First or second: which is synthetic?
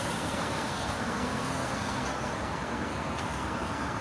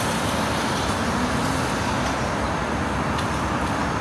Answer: first